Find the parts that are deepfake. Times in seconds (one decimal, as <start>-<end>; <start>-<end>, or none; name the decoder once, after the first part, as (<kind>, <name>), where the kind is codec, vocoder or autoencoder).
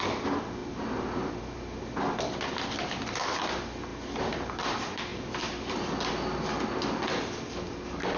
none